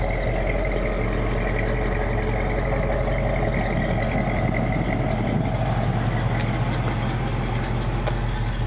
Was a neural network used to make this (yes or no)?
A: no